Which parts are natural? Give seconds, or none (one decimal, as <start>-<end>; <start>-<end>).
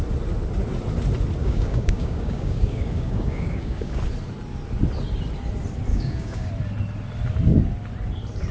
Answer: 0.0-1.4; 4.0-5.9; 6.5-8.5